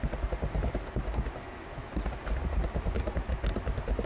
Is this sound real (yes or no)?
yes